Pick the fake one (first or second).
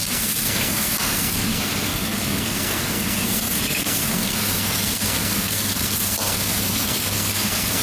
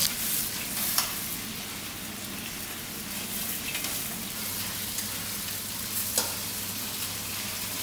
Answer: first